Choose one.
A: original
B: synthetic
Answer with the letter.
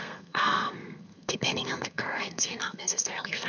B